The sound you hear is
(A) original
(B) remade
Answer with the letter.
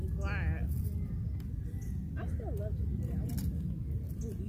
A